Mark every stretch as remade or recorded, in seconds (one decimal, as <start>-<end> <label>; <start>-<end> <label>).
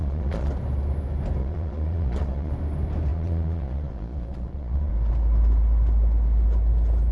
0.0-0.5 remade; 0.5-1.4 recorded; 1.4-2.5 remade; 2.5-3.1 recorded; 3.1-4.9 remade; 4.9-7.1 recorded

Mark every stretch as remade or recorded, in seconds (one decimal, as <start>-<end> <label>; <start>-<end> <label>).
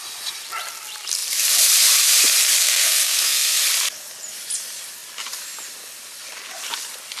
0.0-2.6 recorded; 2.6-3.6 remade; 3.6-7.2 recorded